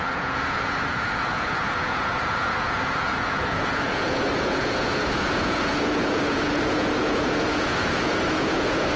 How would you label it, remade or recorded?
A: remade